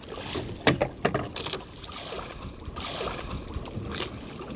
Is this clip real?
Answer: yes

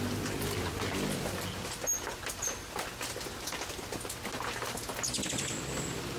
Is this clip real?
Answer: yes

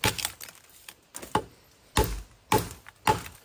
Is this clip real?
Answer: yes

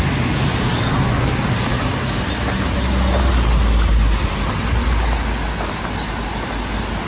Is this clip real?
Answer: yes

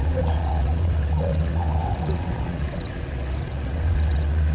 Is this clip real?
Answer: no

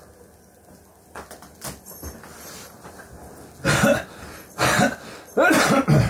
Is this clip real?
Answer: yes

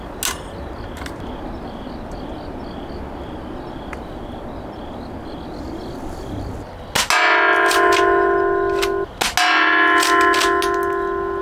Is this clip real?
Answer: yes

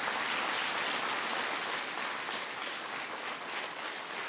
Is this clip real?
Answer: yes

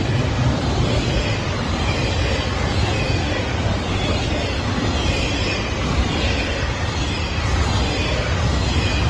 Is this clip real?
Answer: yes